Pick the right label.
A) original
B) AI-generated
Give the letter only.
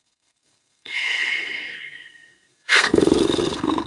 B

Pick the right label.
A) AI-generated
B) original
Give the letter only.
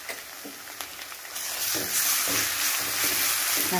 B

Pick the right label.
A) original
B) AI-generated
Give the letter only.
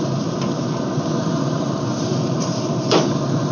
B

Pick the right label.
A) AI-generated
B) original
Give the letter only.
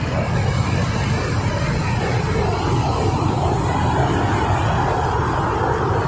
B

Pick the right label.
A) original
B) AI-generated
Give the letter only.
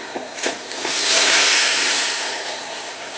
B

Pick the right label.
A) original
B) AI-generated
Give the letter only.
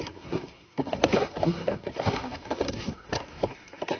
B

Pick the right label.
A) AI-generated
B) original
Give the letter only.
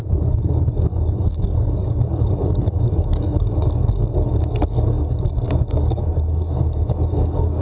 A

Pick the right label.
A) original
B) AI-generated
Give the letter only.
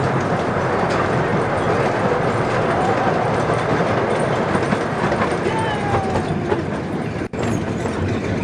B